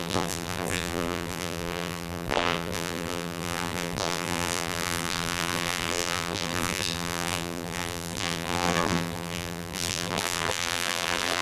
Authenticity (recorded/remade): remade